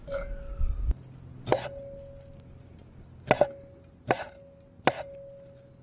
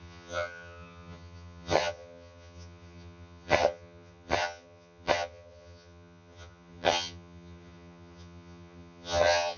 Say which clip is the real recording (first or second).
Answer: first